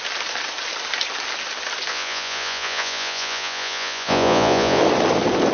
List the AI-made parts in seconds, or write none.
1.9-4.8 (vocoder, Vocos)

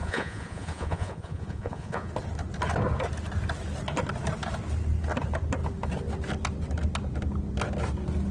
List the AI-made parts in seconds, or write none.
0.0-2.1 (vocoder, Vocos)

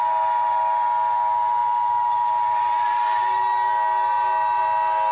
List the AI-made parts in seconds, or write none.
none

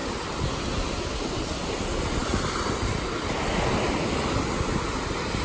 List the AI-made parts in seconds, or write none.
none

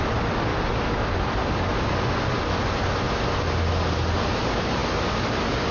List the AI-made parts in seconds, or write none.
none

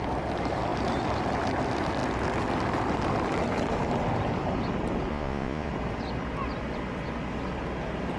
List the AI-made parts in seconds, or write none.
5.1-5.7 (vocoder, Vocos)